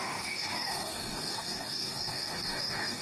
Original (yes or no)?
no